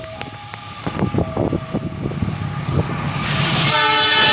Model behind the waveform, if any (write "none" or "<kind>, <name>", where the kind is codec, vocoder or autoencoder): none